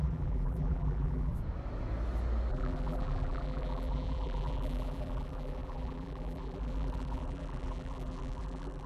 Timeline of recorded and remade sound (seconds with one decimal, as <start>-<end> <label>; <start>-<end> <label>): 0.0-1.3 remade; 1.3-2.5 recorded; 2.5-8.9 remade